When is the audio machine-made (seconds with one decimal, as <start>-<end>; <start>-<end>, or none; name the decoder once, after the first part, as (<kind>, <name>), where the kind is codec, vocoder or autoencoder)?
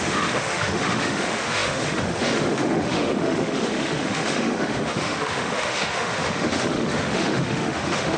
0.0-8.2 (autoencoder, DAC-VAE)